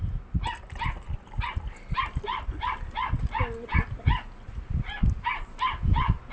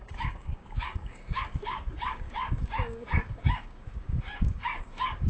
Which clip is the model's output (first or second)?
second